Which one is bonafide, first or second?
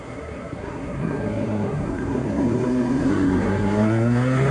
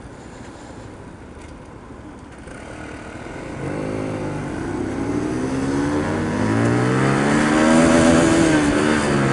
second